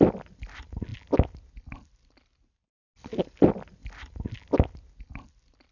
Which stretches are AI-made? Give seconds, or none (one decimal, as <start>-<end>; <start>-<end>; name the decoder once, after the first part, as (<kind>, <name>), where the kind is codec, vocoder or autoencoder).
none